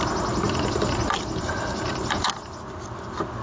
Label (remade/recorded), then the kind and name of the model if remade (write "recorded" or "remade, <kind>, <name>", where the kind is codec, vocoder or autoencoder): recorded